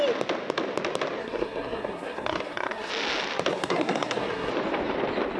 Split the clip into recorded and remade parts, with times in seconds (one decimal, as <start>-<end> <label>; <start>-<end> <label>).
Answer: 0.0-1.2 recorded; 1.2-2.9 remade; 2.9-3.5 recorded; 3.5-4.5 remade; 4.5-5.4 recorded